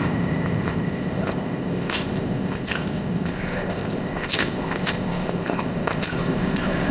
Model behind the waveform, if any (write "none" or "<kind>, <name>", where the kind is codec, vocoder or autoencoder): codec, ZipCodec